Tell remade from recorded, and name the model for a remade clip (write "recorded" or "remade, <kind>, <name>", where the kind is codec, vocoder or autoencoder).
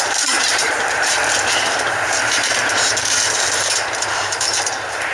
remade, vocoder, BigVGAN v2